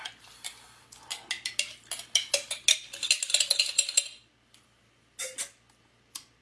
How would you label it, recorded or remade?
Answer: recorded